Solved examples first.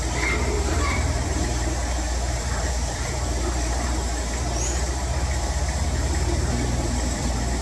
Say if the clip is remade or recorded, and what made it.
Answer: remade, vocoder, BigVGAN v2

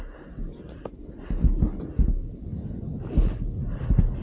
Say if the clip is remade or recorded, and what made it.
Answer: recorded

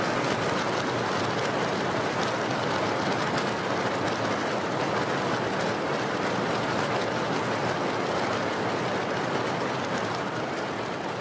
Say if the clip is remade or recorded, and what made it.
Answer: recorded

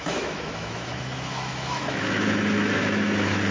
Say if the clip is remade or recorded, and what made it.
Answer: remade, autoencoder, DAC-VAE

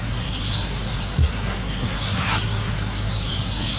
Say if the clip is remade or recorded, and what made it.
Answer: remade, codec, SNAC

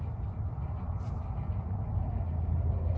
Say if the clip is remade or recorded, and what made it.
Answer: recorded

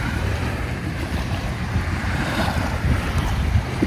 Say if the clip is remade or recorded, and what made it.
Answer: remade, vocoder, BigVGAN v2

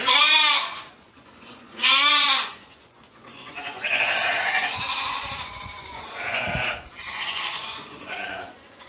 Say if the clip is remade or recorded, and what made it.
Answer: remade, vocoder, Vocos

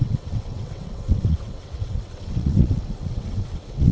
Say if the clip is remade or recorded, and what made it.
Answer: remade, vocoder, WaveNeXt